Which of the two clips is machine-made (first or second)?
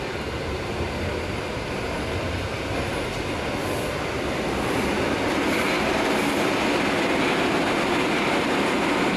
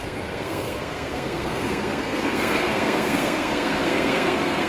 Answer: second